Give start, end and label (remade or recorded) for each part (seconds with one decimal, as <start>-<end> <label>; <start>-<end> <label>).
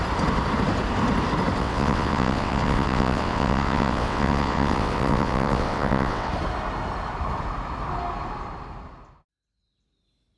0.0-1.6 recorded; 1.6-6.3 remade; 6.3-10.4 recorded